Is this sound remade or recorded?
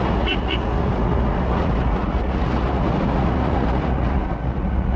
remade